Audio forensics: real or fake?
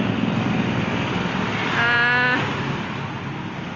real